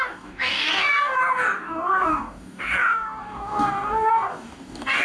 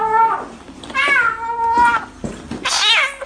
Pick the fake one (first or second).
first